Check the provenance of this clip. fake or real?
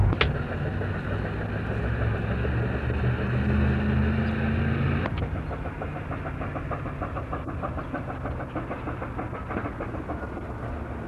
real